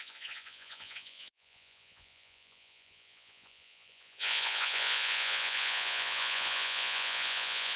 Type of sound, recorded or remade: remade